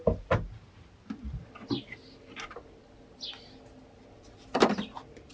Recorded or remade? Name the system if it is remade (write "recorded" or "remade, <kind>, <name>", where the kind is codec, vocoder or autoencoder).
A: recorded